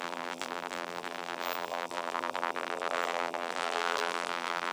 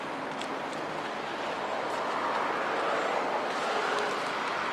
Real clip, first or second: second